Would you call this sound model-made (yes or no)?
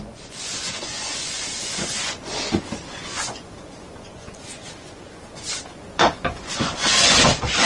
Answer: yes